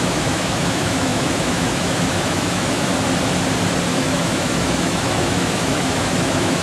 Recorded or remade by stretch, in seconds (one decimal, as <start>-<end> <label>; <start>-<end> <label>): 0.0-2.9 remade; 2.9-3.9 recorded; 3.9-6.6 remade